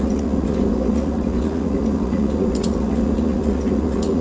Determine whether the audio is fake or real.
fake